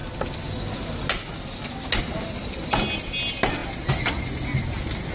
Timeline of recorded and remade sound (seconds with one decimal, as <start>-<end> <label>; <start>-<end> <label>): 0.0-5.1 recorded